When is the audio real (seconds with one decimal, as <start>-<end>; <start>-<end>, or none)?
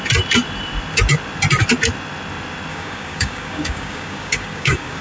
0.0-2.7